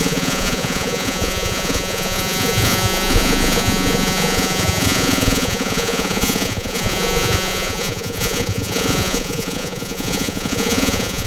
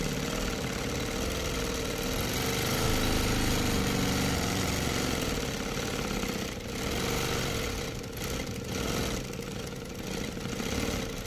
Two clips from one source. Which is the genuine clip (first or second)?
second